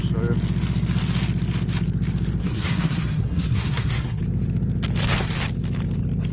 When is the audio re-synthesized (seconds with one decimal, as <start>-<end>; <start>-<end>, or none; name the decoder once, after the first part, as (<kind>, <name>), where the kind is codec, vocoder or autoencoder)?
2.4-4.2 (codec, SNAC)